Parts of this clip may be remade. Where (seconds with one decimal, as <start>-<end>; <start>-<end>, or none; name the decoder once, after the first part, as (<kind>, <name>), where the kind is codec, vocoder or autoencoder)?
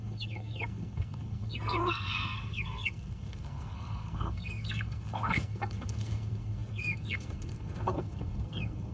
0.0-8.9 (codec, SNAC)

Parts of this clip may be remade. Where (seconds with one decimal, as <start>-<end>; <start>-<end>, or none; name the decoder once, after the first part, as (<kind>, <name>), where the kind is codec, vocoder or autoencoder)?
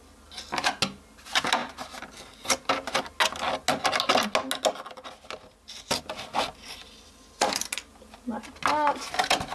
none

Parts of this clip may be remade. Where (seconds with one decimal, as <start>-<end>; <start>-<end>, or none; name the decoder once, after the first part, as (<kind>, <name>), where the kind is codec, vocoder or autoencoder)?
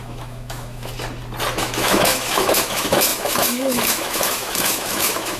0.0-0.9 (autoencoder, DAC-VAE); 1.5-5.4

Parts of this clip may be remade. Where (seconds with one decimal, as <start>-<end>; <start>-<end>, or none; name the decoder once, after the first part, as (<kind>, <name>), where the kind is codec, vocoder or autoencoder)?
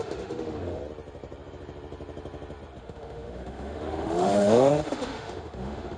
0.0-0.8 (autoencoder, DAC-VAE); 2.8-6.0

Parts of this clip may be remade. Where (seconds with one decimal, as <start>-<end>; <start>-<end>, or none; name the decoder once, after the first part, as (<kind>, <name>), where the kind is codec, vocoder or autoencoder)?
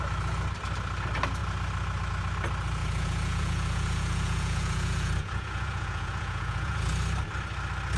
2.8-6.8 (vocoder, Vocos)